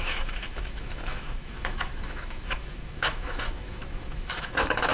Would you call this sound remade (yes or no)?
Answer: yes